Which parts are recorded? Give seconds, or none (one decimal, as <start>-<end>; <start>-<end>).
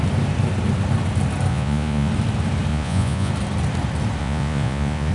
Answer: 0.0-1.5; 2.1-2.7; 3.3-4.2